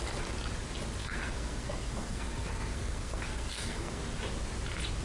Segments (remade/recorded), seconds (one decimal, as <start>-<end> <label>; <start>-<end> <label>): 0.0-1.0 recorded; 1.0-4.0 remade; 4.0-5.0 recorded